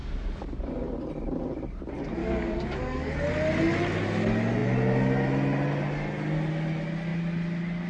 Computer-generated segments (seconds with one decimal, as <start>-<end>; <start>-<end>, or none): 0.0-0.6; 2.2-3.1